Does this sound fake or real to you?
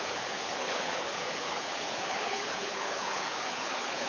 fake